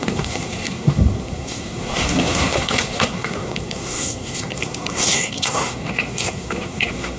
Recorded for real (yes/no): no